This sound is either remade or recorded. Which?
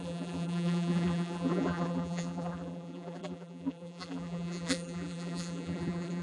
remade